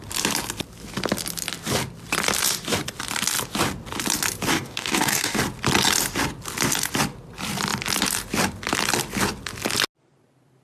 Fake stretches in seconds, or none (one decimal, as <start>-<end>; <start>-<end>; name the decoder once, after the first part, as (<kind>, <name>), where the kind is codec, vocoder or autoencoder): 4.5-5.4 (codec, DAC)